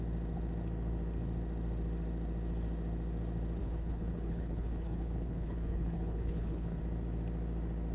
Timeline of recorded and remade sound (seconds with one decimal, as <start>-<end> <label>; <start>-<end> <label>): 0.0-3.6 recorded; 3.6-6.8 remade; 6.8-7.9 recorded